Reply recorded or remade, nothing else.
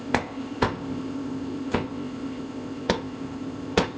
remade